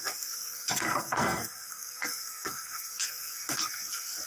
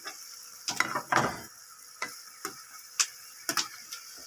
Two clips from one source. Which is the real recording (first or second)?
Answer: second